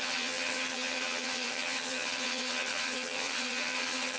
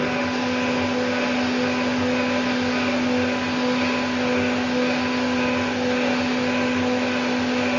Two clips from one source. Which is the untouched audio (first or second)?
second